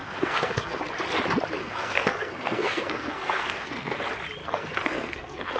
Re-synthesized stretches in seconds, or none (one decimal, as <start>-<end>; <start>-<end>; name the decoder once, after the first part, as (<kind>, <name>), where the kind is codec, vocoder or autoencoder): 0.0-0.8 (codec, SNAC); 1.6-4.0; 4.4-5.6